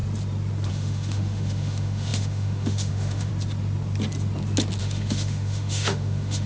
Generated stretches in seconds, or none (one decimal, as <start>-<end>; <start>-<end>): 0.7-3.3; 4.8-6.5